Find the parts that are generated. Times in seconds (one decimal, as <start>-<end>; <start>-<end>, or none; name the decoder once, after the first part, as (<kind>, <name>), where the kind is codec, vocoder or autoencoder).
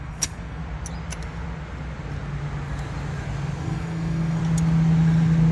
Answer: 0.0-0.6 (codec, SNAC); 3.6-4.4